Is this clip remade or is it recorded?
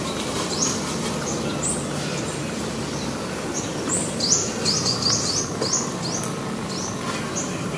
recorded